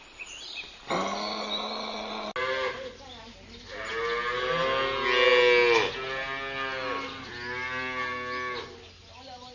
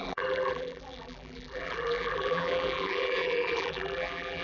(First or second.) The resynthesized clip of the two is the second